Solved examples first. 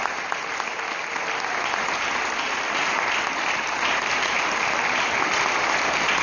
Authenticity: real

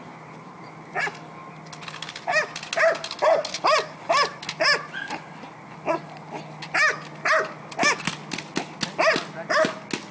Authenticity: real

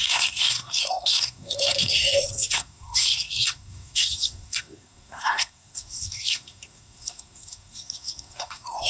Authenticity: fake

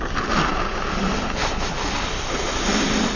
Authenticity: real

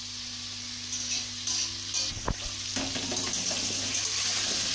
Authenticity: real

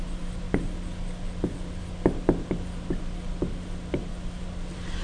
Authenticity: real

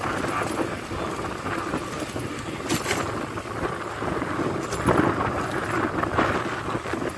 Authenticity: real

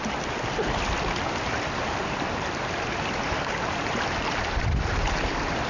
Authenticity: real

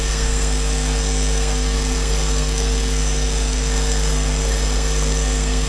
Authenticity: fake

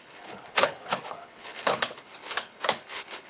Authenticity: fake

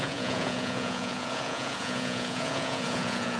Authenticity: fake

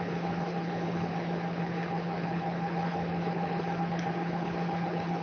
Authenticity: fake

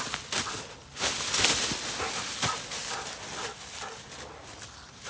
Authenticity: real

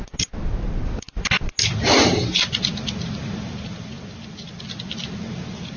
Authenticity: real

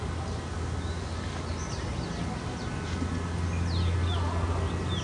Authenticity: real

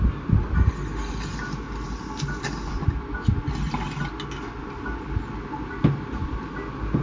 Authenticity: real